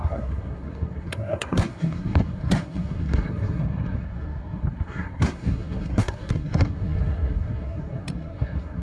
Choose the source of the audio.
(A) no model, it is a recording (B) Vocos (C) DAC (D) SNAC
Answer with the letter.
D